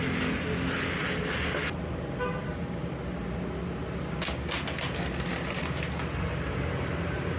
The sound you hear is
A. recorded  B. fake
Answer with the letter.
A